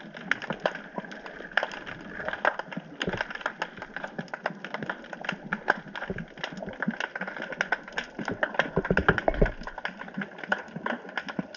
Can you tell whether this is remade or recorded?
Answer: recorded